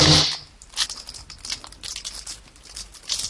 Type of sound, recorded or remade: recorded